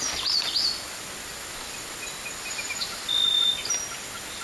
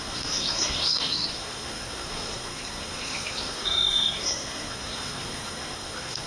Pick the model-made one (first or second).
second